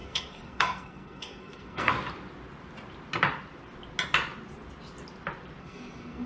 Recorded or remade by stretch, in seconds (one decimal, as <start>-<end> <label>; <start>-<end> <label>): 0.0-1.9 remade; 1.9-5.6 recorded; 5.6-6.3 remade